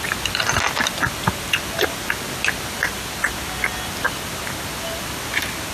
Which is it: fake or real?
real